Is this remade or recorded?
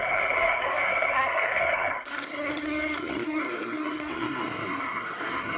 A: remade